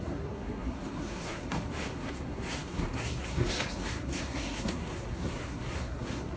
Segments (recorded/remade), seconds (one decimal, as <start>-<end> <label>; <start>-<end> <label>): 0.0-6.4 remade